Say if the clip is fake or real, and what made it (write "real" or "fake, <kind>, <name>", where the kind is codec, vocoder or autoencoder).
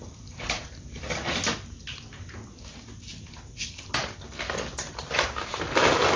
real